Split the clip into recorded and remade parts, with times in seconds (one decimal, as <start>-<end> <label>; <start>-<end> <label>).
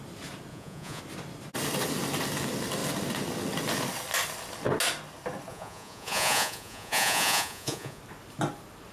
0.0-0.5 recorded; 0.5-1.0 remade; 1.0-5.5 recorded; 5.5-8.0 remade; 8.0-8.9 recorded